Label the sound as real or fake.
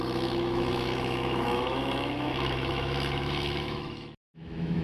fake